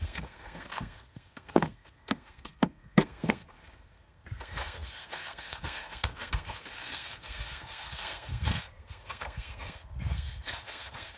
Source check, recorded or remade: remade